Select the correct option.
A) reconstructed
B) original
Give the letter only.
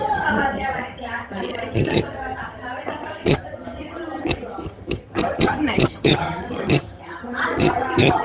A